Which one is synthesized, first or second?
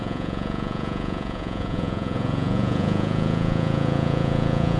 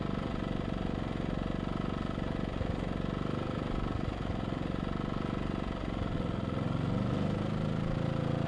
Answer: first